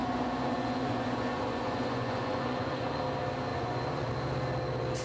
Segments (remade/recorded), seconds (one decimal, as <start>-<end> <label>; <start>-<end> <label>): 0.0-3.0 remade; 3.0-3.5 recorded; 3.5-4.1 remade; 4.1-5.0 recorded